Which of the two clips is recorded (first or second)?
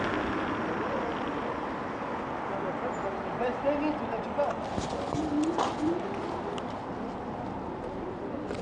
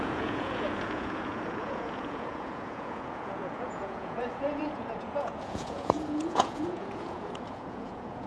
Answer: first